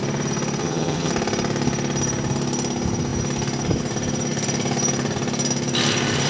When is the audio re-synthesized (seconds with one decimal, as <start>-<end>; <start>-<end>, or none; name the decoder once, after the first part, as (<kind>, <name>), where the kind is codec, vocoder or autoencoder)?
0.6-1.1 (vocoder, HiFi-GAN)